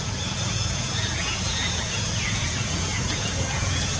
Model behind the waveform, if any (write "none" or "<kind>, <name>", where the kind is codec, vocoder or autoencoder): vocoder, Vocos